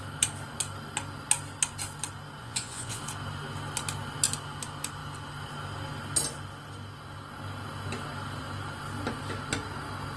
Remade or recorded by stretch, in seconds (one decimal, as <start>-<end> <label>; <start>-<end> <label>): 0.0-2.4 recorded; 2.4-3.0 remade; 3.0-10.2 recorded